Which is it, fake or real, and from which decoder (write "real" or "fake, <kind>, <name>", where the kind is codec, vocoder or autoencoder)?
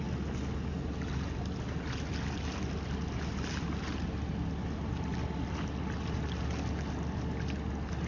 real